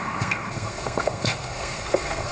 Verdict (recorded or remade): remade